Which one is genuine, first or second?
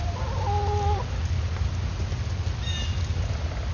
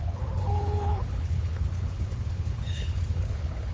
first